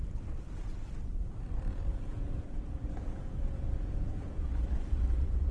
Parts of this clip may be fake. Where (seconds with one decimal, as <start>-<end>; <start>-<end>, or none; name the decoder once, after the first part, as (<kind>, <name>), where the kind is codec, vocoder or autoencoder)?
1.9-4.5 (vocoder, Vocos)